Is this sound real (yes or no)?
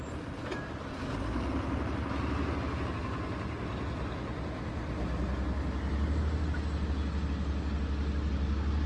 yes